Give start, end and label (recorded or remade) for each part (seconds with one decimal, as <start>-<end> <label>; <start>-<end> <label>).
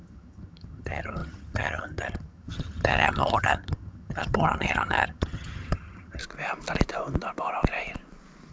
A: 0.0-6.2 remade; 6.2-8.5 recorded